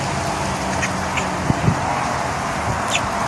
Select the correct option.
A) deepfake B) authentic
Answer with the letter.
B